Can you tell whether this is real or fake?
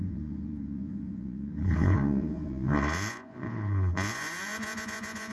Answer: fake